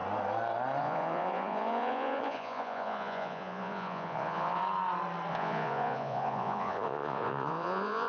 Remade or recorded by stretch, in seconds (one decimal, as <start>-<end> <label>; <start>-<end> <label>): 0.0-0.8 recorded; 0.8-4.6 remade; 4.6-5.3 recorded; 5.3-8.1 remade